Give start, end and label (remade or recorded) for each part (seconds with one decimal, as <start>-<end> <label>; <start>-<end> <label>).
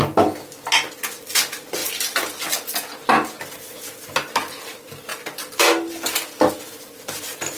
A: 0.0-1.8 recorded; 1.8-2.4 remade; 2.4-5.1 recorded; 5.1-6.5 remade; 6.5-7.6 recorded